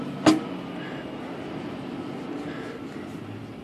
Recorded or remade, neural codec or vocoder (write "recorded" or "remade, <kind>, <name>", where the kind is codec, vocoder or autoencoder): recorded